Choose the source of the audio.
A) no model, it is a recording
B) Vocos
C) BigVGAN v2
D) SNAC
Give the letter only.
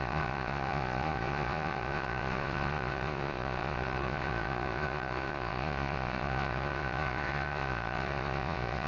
B